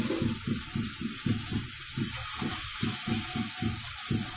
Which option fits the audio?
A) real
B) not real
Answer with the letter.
A